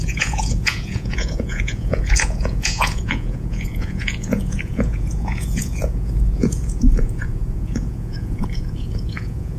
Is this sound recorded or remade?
remade